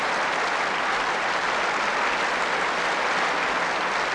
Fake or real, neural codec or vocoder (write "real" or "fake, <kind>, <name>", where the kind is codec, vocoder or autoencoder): real